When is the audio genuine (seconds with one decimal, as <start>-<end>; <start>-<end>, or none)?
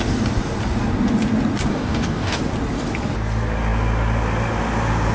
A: 0.0-1.7; 2.4-5.1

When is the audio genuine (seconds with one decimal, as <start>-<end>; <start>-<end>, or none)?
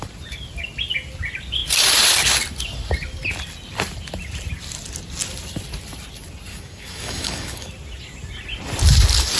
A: 0.0-6.5; 7.7-9.4